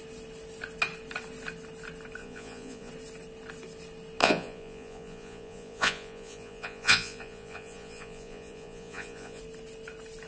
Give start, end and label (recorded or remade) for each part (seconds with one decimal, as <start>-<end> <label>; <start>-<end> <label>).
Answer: 0.0-2.2 recorded; 2.2-2.9 remade; 2.9-4.2 recorded; 4.2-9.4 remade; 9.4-10.3 recorded